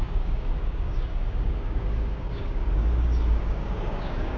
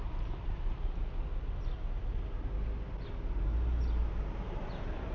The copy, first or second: first